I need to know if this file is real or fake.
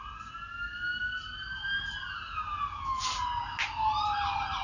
real